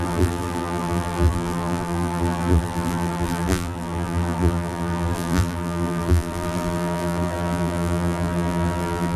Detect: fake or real fake